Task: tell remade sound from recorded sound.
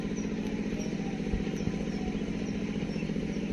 recorded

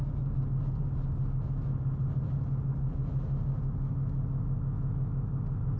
recorded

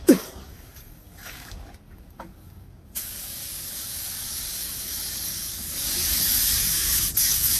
remade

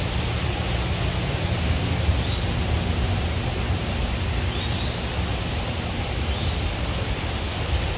recorded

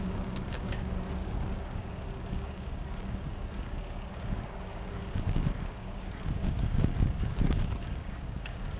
remade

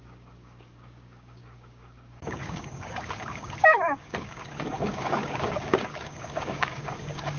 remade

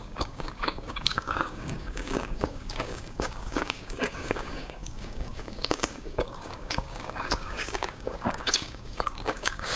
remade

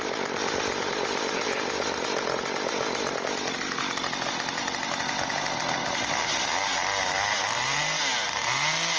recorded